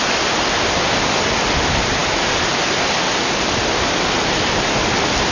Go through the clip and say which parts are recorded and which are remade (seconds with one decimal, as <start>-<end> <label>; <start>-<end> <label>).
0.0-5.3 recorded